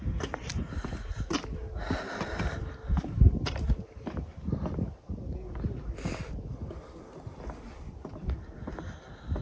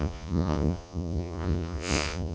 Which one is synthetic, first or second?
second